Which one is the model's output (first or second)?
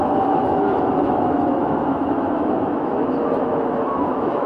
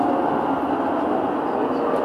first